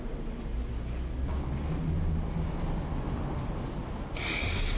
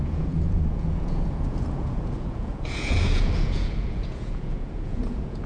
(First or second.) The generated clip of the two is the second